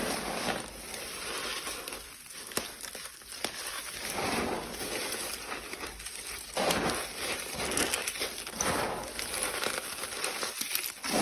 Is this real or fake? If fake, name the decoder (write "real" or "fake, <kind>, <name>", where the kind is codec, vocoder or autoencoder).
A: fake, vocoder, BigVGAN v2